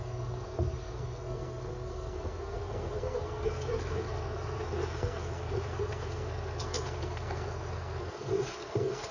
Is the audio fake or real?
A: fake